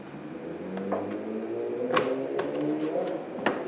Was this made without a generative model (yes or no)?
yes